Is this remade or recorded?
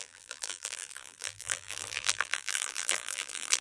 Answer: remade